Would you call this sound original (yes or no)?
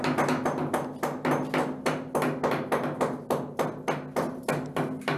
yes